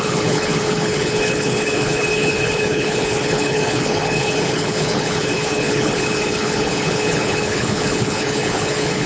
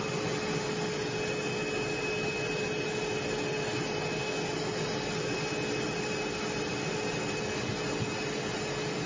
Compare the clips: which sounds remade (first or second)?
first